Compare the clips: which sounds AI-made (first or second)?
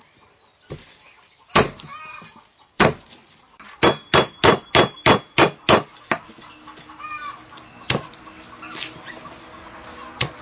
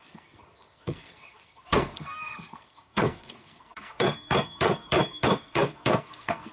second